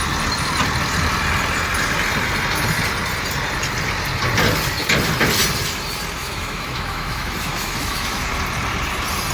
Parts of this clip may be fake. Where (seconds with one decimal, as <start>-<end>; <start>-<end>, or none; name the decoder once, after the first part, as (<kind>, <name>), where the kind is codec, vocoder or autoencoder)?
6.2-8.3 (autoencoder, DAC-VAE)

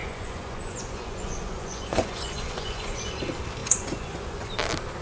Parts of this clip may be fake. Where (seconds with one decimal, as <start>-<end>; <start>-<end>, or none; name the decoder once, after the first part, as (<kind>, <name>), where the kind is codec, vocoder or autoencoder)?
0.0-3.0 (vocoder, Vocos); 3.6-4.5

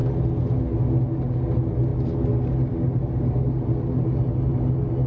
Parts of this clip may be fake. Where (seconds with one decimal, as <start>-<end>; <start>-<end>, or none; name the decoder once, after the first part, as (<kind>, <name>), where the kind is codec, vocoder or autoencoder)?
none